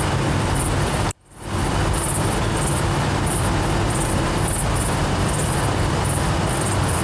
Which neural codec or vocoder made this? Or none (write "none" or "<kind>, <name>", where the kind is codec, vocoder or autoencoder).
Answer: vocoder, BigVGAN v2